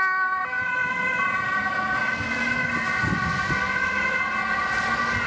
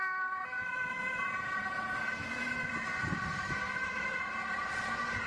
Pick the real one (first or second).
first